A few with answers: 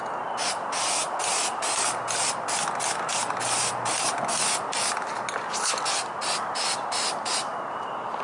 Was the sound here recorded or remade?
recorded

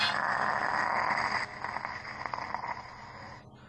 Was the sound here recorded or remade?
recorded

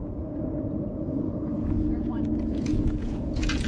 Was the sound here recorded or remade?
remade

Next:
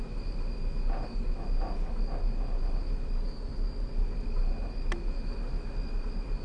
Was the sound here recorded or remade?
recorded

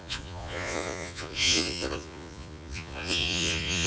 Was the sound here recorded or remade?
remade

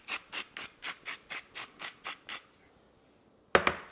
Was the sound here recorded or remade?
recorded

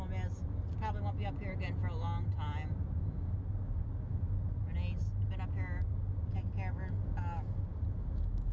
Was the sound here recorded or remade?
recorded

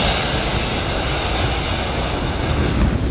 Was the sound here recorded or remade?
recorded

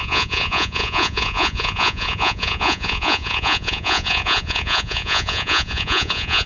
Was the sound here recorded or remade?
remade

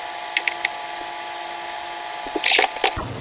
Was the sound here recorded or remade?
recorded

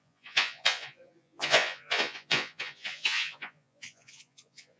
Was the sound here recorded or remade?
remade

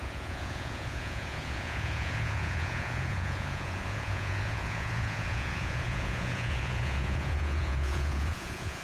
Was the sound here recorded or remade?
remade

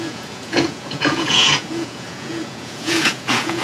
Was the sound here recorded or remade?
remade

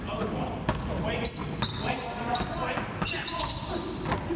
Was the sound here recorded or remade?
recorded